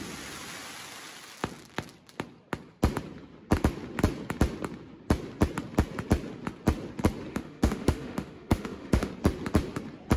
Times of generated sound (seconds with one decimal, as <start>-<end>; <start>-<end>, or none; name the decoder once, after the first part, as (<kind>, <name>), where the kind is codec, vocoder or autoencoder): 7.3-9.1 (autoencoder, DAC-VAE)